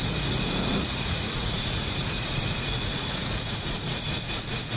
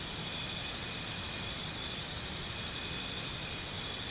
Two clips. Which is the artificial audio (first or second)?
first